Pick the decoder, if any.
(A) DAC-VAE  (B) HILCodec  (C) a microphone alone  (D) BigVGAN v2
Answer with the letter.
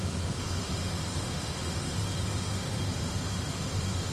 A